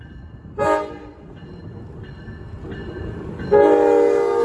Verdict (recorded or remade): recorded